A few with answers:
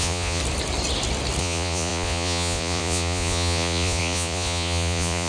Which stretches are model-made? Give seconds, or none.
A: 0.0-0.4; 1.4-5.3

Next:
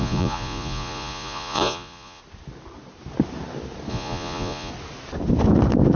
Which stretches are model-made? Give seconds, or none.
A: 0.0-2.2; 3.9-4.7

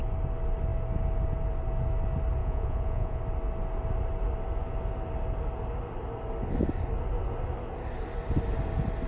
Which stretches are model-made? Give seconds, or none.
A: 2.4-3.2

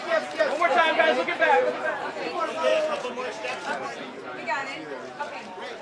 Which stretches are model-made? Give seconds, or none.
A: 0.9-2.0; 2.7-3.5

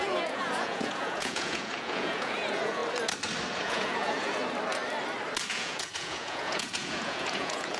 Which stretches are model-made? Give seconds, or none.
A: 0.0-2.8; 3.5-4.4; 5.5-7.8

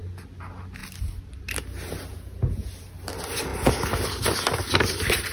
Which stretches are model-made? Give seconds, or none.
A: 2.1-2.7

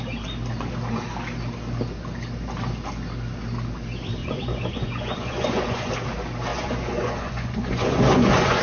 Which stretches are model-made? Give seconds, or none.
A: 4.2-5.9; 6.5-8.6